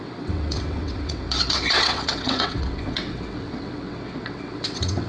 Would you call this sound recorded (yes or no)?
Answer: no